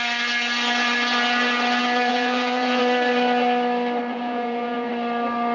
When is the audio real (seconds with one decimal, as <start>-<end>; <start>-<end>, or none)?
0.0-2.1; 2.8-4.1; 4.9-5.5